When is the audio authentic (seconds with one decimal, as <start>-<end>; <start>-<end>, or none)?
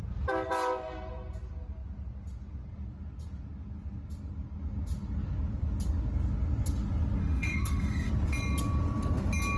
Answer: 0.0-7.2; 8.1-9.6